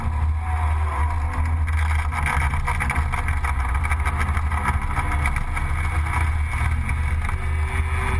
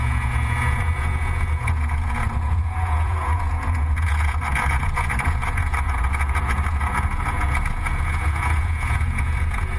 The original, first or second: first